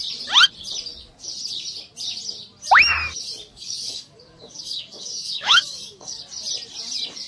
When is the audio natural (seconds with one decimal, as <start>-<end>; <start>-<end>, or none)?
0.0-3.5; 6.2-7.3